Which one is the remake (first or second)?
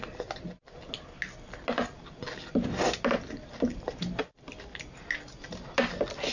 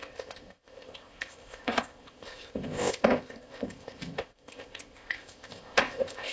second